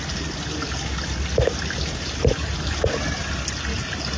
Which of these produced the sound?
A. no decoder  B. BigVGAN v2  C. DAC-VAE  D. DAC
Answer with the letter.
A